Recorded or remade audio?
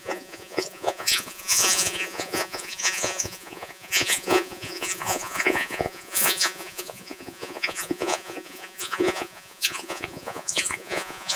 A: remade